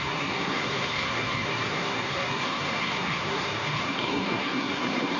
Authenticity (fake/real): fake